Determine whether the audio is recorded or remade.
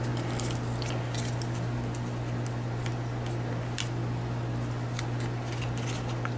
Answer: recorded